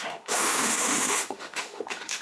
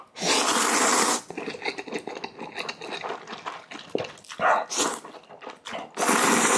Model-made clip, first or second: first